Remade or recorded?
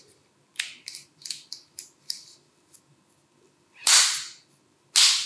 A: recorded